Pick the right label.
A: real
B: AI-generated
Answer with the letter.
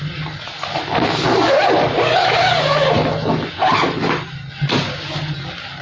A